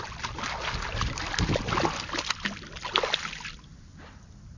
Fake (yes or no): no